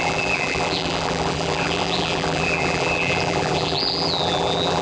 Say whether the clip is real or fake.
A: fake